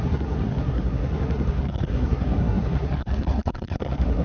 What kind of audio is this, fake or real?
fake